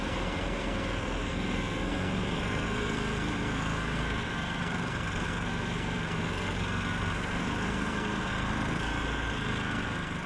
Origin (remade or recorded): remade